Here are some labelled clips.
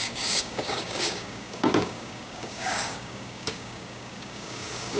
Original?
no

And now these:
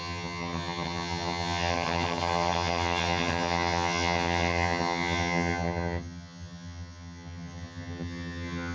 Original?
no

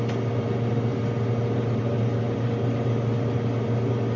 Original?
yes